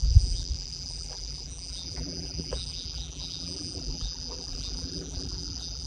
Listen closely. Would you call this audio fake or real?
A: fake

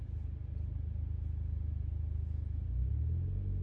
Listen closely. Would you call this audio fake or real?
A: real